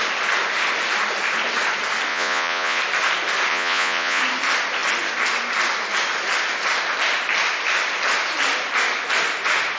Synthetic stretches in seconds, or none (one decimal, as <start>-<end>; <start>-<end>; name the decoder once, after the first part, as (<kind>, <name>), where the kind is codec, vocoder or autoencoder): 2.1-2.8 (vocoder, Vocos); 3.5-4.2